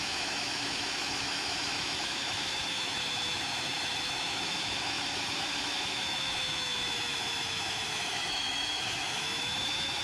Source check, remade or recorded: remade